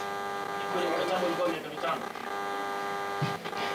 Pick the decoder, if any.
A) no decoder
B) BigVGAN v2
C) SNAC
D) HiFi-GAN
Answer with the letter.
A